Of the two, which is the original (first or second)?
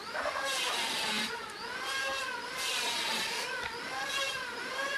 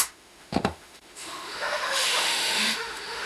first